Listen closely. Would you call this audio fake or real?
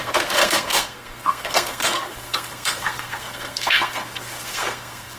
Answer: fake